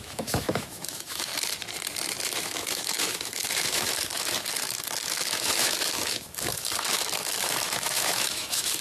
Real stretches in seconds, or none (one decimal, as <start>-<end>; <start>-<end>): 1.3-2.2